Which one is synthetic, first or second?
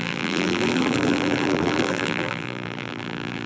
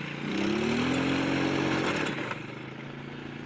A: first